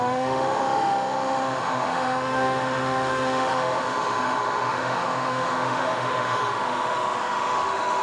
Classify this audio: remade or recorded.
remade